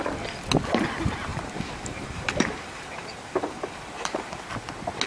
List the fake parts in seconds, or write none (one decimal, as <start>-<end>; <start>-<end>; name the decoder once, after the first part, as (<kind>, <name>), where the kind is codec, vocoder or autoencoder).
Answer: 1.3-4.4 (vocoder, BigVGAN v2)